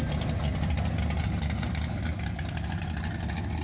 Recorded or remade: recorded